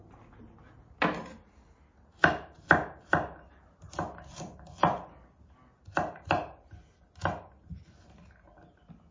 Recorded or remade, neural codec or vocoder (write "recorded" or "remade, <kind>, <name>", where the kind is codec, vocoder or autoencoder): recorded